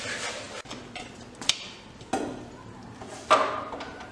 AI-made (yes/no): no